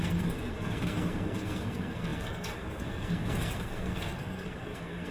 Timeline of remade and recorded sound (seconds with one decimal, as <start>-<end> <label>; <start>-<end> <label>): 0.0-5.1 remade